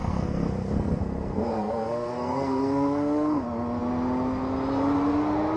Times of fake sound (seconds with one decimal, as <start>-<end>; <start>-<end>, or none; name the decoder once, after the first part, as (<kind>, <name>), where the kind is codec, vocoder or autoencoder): 0.0-3.4 (codec, SNAC)